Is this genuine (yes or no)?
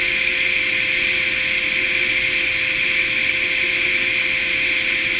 yes